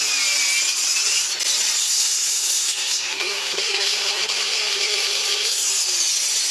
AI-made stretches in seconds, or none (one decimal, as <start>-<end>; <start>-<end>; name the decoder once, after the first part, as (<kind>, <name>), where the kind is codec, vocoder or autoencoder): 1.8-5.7 (codec, SNAC)